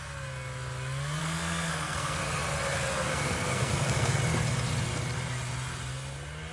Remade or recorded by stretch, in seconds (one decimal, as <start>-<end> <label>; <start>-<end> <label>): 0.0-1.2 recorded; 1.2-2.2 remade; 2.2-2.9 recorded; 2.9-4.2 remade; 4.2-6.5 recorded